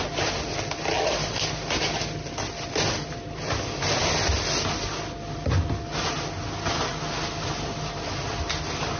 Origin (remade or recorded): recorded